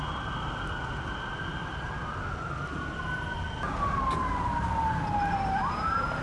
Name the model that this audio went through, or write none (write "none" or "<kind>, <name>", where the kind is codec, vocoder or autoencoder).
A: none